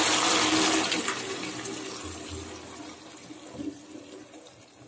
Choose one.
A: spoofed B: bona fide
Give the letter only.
B